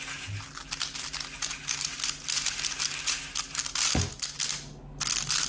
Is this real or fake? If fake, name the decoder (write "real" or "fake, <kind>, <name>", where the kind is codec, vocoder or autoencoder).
real